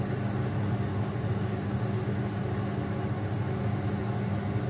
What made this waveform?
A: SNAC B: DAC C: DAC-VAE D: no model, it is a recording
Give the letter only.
D